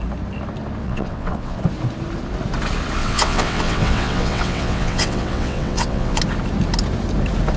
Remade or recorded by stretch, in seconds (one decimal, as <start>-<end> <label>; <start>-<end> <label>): 0.0-0.8 recorded; 0.8-1.6 remade; 1.6-3.0 recorded; 3.0-6.2 remade; 6.2-7.6 recorded